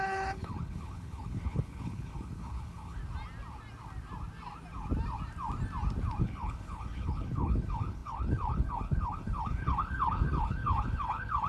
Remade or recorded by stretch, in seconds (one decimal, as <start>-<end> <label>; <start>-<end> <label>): 0.0-3.0 remade; 3.0-6.2 recorded; 6.2-11.5 remade